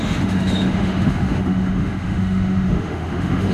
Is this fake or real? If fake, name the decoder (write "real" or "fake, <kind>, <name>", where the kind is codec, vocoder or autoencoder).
fake, autoencoder, DAC-VAE